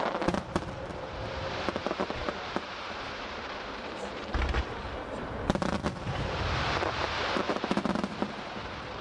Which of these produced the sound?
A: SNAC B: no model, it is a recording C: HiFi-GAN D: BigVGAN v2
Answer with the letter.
D